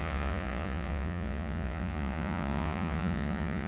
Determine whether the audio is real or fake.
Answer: fake